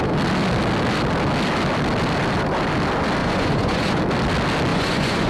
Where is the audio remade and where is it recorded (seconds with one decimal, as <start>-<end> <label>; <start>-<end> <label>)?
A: 0.0-3.2 recorded; 3.2-4.0 remade; 4.0-4.7 recorded; 4.7-5.3 remade